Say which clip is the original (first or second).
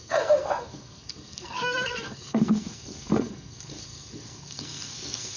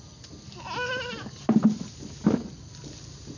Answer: second